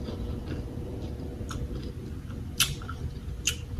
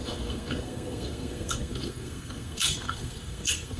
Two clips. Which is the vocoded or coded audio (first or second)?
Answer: second